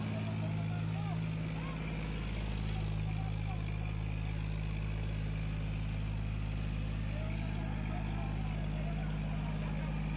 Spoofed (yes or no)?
no